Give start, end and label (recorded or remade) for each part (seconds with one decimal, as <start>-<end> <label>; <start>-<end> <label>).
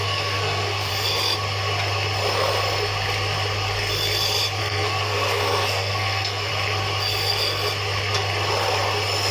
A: 0.0-0.9 remade; 0.9-4.6 recorded; 4.6-6.5 remade; 6.5-9.3 recorded